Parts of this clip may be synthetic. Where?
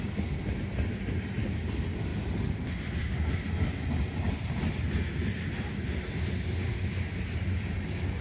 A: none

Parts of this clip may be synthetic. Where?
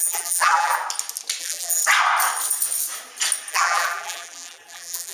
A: 0.0-0.8 (vocoder, BigVGAN v2); 1.4-1.8; 3.5-5.1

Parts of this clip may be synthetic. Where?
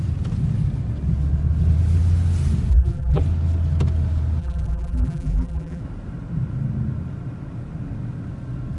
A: 2.7-3.2 (vocoder, BigVGAN v2); 4.4-5.8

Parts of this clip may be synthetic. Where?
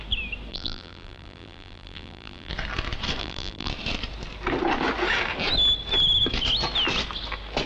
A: 0.5-2.5 (vocoder, BigVGAN v2); 3.2-3.7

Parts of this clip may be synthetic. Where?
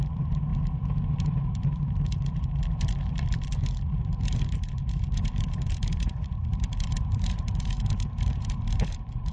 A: 0.0-0.5 (vocoder, BigVGAN v2); 1.2-9.3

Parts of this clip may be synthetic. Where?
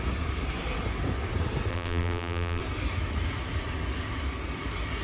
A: 1.7-2.6 (vocoder, BigVGAN v2)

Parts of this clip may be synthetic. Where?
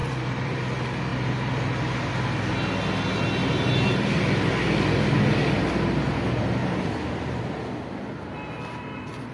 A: 0.0-0.6 (vocoder, BigVGAN v2); 3.4-4.2; 6.6-7.4